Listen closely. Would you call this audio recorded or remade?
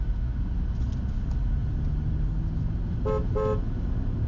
recorded